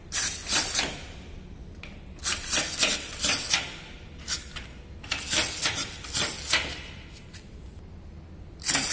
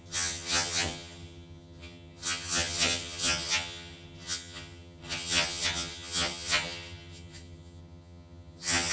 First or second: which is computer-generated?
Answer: second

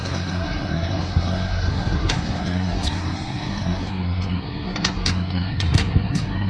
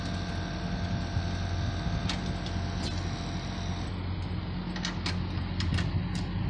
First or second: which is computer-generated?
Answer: first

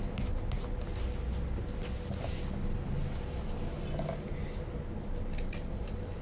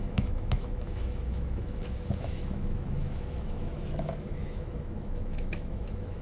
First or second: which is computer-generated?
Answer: second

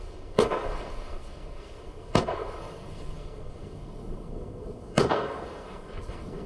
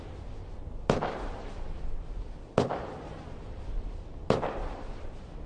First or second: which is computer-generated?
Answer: first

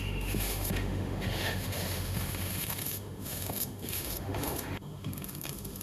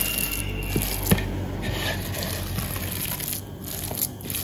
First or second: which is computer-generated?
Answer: first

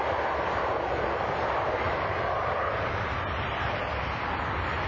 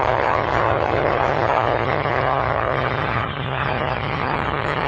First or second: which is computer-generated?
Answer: second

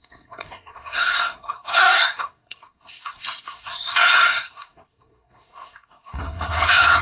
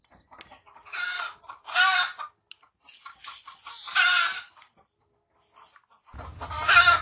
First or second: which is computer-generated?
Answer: first